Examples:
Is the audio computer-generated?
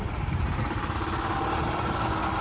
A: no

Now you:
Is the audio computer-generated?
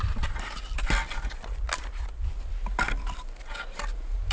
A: no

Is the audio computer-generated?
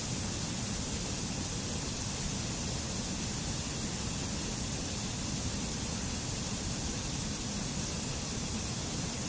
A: no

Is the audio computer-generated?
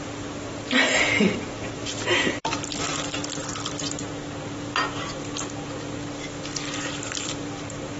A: yes